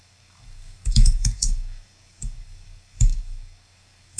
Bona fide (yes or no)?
no